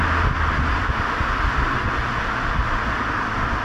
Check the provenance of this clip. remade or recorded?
recorded